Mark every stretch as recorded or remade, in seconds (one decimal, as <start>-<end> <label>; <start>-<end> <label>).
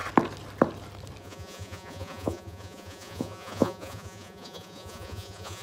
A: 0.0-1.2 recorded; 1.2-5.6 remade